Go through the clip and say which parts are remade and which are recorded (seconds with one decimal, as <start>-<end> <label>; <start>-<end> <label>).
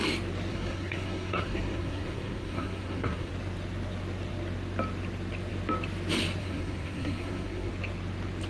0.0-0.5 recorded; 0.5-3.3 remade; 3.3-6.4 recorded; 6.4-7.7 remade; 7.7-8.5 recorded